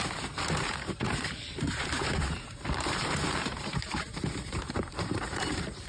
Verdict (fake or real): fake